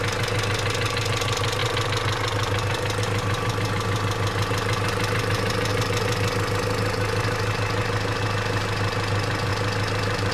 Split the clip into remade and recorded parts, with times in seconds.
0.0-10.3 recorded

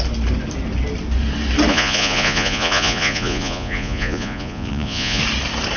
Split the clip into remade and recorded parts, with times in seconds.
0.0-1.7 recorded; 1.7-5.2 remade; 5.2-5.8 recorded

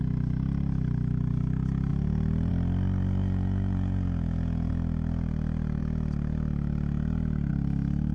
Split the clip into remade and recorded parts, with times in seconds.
0.0-3.2 recorded; 3.2-4.7 remade; 4.7-8.1 recorded

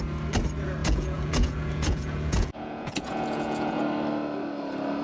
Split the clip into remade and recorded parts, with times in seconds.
0.0-0.8 recorded; 0.8-3.8 remade; 3.8-5.0 recorded

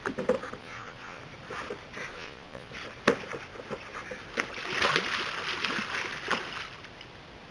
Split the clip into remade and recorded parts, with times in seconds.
0.0-0.6 recorded; 0.6-1.2 remade; 1.2-2.1 recorded; 2.1-2.7 remade; 2.7-7.5 recorded

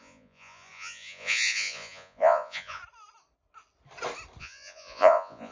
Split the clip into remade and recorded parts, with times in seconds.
0.0-2.8 remade; 2.8-4.4 recorded; 4.4-5.5 remade

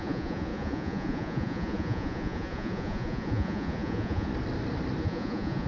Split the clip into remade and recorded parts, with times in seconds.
0.0-4.3 remade; 4.3-5.0 recorded; 5.0-5.7 remade